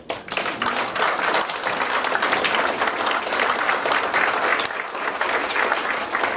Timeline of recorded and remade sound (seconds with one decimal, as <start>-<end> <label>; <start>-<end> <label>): 0.0-4.5 recorded; 4.5-6.0 remade; 6.0-6.4 recorded

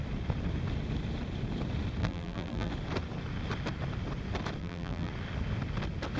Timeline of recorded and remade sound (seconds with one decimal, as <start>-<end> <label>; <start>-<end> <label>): 0.0-2.0 recorded; 2.0-2.7 remade; 2.7-4.6 recorded; 4.6-5.1 remade; 5.1-6.2 recorded

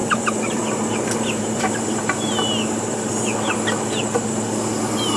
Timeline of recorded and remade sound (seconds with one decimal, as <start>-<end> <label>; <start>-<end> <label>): 0.0-3.1 remade; 3.1-5.2 recorded

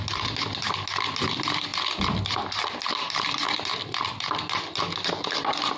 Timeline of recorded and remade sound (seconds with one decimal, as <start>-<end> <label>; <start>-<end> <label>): 0.0-5.8 recorded

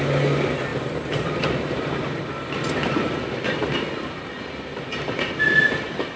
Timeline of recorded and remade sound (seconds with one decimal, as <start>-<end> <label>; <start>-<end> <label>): 0.0-0.7 recorded; 0.7-2.2 remade; 2.2-6.2 recorded

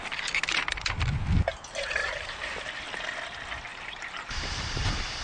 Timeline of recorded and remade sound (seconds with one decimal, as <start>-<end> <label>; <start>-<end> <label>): 0.0-2.0 recorded; 2.0-2.6 remade; 2.6-3.7 recorded; 3.7-5.2 remade

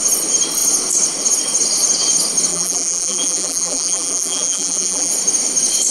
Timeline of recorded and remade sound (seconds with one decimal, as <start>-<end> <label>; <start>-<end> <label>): 0.0-2.5 recorded; 2.5-5.1 remade; 5.1-5.9 recorded